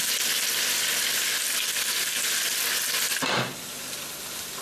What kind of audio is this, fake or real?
real